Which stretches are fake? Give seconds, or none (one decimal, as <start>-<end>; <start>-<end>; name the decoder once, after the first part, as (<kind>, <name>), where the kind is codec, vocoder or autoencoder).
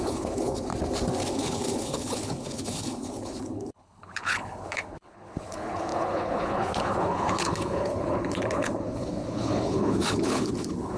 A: 0.0-0.7 (codec, HILCodec); 1.3-11.0